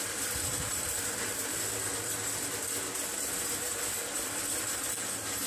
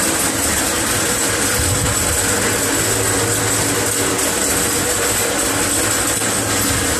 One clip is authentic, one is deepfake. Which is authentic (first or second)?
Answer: second